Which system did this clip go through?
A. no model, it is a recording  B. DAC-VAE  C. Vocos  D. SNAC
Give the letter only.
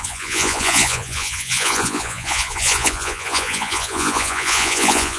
C